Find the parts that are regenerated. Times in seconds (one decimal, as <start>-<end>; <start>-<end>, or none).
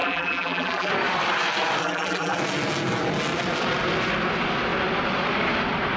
0.0-0.9; 1.8-2.4